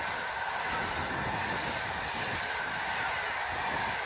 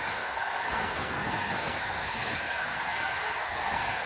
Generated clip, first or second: second